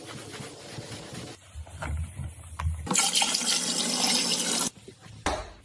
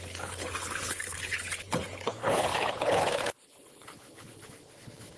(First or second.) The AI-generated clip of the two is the second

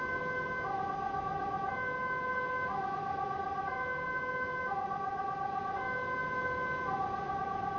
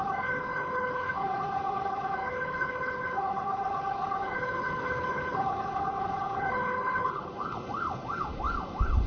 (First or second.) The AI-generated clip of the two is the second